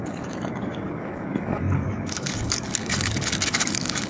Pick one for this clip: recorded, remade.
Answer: remade